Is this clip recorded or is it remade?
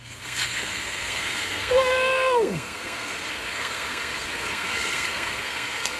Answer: remade